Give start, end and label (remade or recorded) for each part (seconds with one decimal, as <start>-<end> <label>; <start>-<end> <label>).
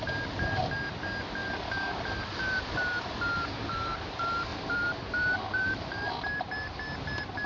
0.0-4.5 recorded; 4.5-6.5 remade; 6.5-7.5 recorded